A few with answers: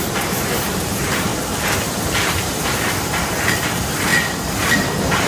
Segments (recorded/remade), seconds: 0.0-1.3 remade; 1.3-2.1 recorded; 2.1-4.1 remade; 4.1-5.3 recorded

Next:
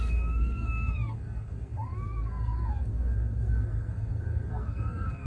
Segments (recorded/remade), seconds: 0.0-5.3 remade

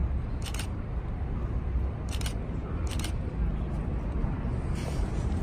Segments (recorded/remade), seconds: 0.0-2.7 remade; 2.7-4.2 recorded; 4.2-5.4 remade